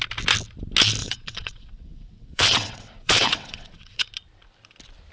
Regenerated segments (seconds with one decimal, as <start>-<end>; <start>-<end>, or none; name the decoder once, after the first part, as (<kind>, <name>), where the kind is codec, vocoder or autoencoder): 1.0-4.1 (vocoder, WaveNeXt)